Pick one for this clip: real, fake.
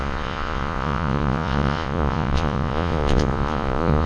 fake